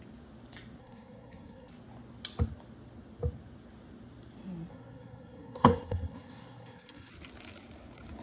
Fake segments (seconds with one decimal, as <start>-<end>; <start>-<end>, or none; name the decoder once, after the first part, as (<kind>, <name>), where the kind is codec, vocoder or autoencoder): 0.8-1.7 (codec, SNAC); 4.7-7.1